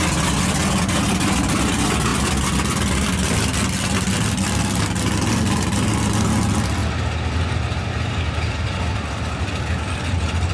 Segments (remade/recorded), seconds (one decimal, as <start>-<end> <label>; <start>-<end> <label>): 0.0-10.5 recorded